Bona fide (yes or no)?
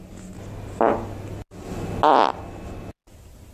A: yes